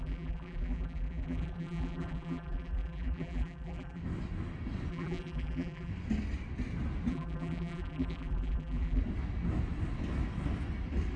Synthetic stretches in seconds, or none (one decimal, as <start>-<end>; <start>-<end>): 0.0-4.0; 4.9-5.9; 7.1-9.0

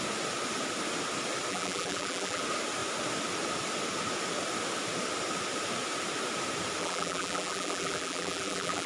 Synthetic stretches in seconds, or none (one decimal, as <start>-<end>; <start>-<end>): 1.5-2.4; 6.8-8.9

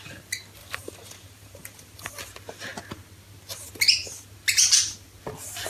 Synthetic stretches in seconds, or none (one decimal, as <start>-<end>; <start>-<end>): 0.6-2.1